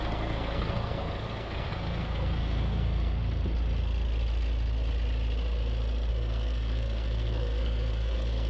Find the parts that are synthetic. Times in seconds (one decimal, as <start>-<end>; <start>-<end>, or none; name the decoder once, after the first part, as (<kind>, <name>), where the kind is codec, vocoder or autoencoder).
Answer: 0.0-3.2 (codec, SNAC); 6.1-8.5

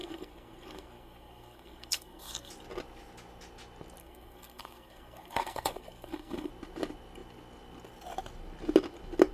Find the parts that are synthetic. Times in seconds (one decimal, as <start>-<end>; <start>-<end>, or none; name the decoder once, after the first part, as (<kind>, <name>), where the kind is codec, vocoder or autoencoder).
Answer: 0.0-2.5 (codec, SNAC); 4.0-6.5

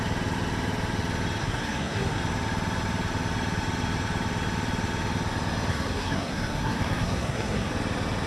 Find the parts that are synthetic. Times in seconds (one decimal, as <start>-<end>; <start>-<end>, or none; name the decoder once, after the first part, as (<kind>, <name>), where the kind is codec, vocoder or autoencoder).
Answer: 1.4-2.2 (codec, SNAC); 5.7-7.7

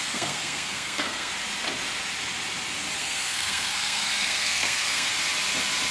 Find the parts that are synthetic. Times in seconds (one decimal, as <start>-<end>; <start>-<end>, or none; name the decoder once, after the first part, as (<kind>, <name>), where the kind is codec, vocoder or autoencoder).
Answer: 0.0-1.3 (codec, SNAC); 3.0-5.1

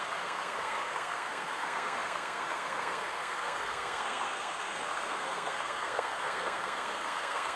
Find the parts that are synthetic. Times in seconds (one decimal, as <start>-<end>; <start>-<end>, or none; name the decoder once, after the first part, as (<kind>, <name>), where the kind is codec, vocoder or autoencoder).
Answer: 0.0-7.6 (codec, SNAC)

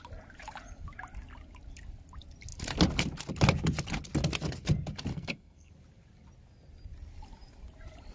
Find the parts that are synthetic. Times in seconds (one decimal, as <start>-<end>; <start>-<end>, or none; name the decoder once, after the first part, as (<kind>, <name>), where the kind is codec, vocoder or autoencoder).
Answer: 5.1-5.7 (codec, SNAC)